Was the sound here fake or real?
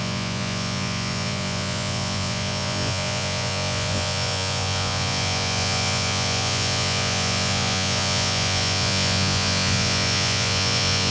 fake